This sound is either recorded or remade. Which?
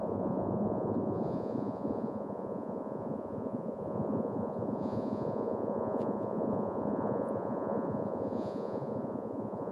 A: remade